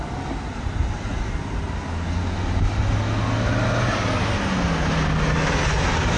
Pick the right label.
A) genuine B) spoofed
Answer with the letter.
A